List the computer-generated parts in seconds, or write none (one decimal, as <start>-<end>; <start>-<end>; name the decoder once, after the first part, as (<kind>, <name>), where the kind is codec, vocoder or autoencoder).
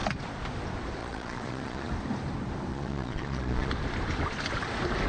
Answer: 1.0-1.9 (vocoder, Vocos); 2.7-3.7